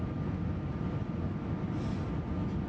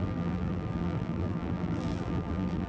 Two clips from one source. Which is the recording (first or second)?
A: first